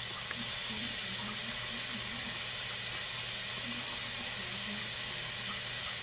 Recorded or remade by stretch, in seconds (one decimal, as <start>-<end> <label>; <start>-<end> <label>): 0.0-6.0 recorded